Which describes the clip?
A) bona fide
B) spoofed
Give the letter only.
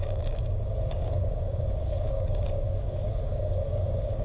B